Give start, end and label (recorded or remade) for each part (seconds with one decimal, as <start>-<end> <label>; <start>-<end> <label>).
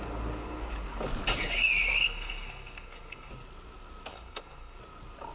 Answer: 0.0-1.9 recorded; 1.9-3.3 remade; 3.3-4.1 recorded; 4.1-4.8 remade; 4.8-5.3 recorded